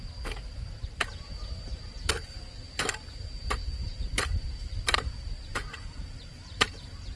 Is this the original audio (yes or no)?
no